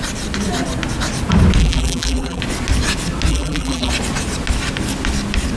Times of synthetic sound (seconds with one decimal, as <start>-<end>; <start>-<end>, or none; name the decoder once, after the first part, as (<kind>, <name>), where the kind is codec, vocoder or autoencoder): 1.6-2.4 (vocoder, BigVGAN v2); 3.3-3.9